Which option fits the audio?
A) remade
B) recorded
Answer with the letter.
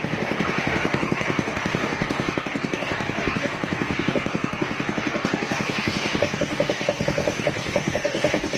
A